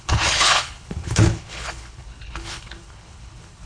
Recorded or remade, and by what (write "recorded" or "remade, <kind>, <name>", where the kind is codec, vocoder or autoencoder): remade, codec, HILCodec